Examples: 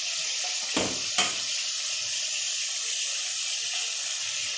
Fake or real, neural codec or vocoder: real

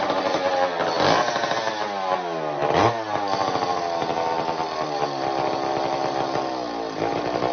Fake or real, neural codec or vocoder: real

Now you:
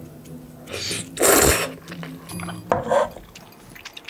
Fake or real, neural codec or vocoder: real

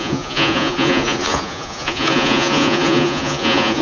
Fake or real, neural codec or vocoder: fake, vocoder, Vocos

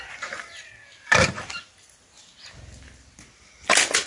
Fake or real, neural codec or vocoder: real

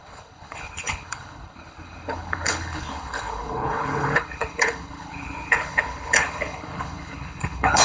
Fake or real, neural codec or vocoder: fake, codec, HILCodec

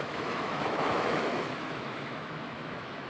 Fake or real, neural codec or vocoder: fake, autoencoder, DAC-VAE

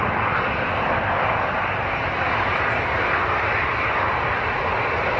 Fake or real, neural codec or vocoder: real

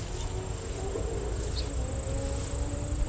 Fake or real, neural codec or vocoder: real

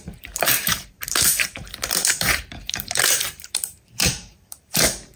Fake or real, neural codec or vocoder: fake, vocoder, BigVGAN v2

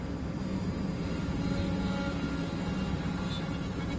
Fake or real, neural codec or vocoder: real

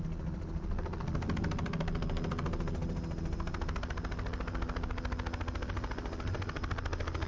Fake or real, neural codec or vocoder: real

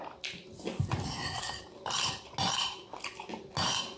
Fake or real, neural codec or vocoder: real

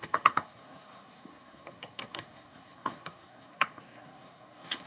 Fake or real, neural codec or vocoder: fake, codec, SNAC